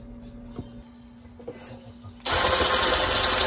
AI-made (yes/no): no